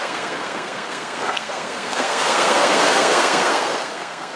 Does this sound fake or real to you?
fake